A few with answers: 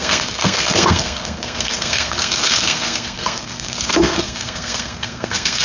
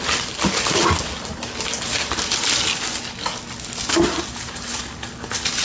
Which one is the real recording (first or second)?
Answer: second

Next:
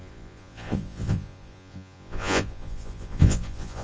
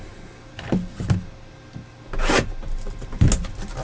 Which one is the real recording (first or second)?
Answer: second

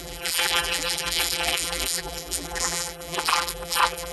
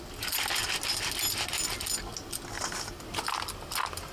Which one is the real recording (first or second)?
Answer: second